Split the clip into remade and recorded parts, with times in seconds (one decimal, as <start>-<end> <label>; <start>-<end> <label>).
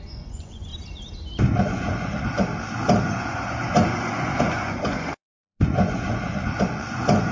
0.0-0.7 remade; 0.7-1.6 recorded; 1.6-2.5 remade; 2.5-3.0 recorded; 3.0-7.3 remade